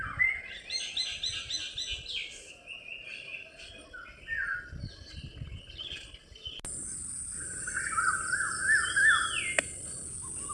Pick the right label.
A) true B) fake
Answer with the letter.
A